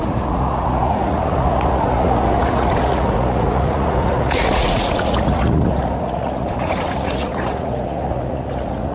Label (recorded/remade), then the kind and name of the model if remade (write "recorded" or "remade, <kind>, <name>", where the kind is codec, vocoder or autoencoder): remade, vocoder, Vocos